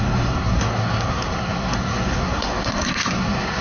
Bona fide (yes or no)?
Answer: no